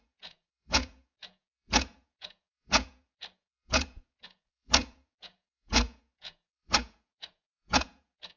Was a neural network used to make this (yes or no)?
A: yes